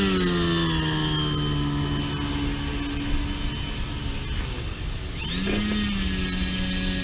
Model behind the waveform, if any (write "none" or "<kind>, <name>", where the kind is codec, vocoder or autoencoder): none